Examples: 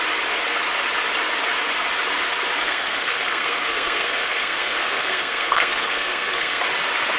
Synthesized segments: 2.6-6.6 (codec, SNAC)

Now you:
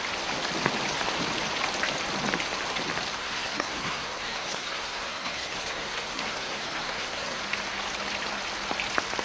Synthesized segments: 3.2-7.4 (codec, SNAC)

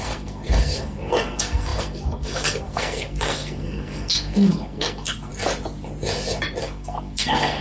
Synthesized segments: 0.0-5.3 (codec, SNAC); 6.6-7.6

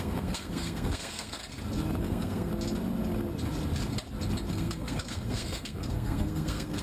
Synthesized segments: 0.0-1.4 (codec, SNAC); 2.0-2.5; 4.5-6.8

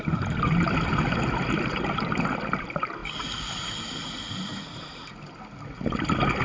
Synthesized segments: none

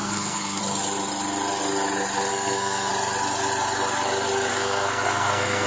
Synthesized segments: 0.0-0.6 (codec, SNAC); 2.3-2.9; 4.5-5.7

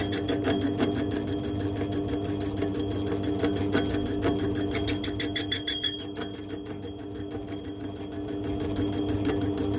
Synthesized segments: none

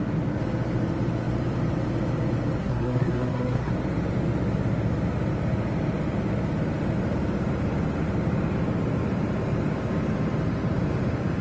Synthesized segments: 2.6-3.7 (codec, SNAC)